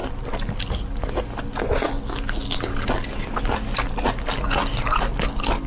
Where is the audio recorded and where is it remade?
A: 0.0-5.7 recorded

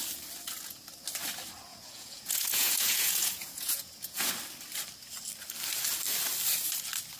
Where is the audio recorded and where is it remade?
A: 0.0-1.7 recorded; 1.7-4.3 remade; 4.3-7.2 recorded

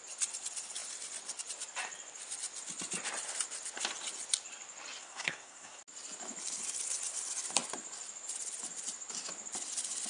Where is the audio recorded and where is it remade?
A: 0.0-5.0 recorded; 5.0-5.8 remade; 5.8-10.1 recorded

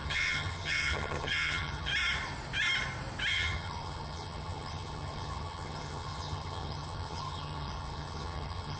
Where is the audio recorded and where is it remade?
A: 0.0-1.9 remade; 1.9-3.3 recorded; 3.3-8.8 remade

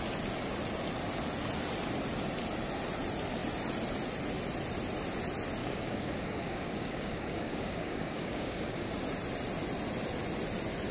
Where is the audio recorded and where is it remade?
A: 0.0-5.6 recorded; 5.6-8.9 remade; 8.9-10.9 recorded